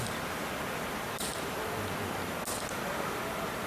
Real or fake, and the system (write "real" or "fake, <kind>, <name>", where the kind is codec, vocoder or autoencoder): real